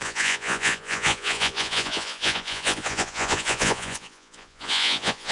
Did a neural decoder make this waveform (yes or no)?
yes